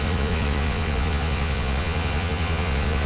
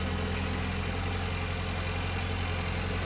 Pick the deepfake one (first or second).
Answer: first